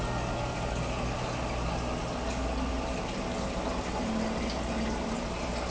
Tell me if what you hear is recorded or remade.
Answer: recorded